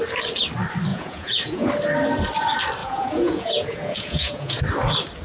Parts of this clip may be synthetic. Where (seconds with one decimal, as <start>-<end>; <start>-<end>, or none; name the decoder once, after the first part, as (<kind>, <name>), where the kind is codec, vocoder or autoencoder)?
0.9-1.7 (vocoder, Vocos); 2.8-4.6